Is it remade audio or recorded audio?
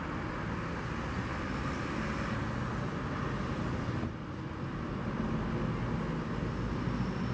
recorded